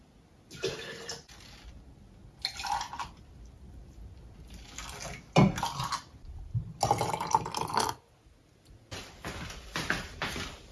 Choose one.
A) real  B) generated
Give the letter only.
A